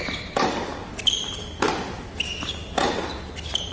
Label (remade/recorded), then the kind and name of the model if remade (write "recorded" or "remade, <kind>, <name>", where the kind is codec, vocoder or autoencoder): recorded